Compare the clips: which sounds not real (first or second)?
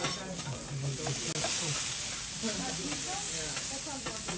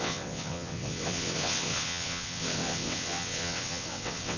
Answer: second